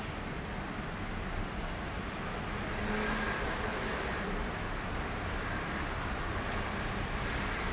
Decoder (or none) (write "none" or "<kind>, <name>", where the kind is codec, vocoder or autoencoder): none